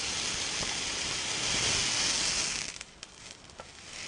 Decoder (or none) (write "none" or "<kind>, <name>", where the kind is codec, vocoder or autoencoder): none